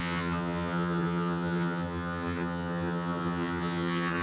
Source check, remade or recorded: remade